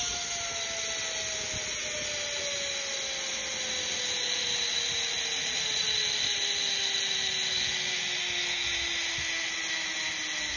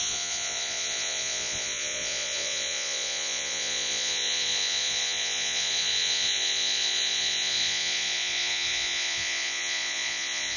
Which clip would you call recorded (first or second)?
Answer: first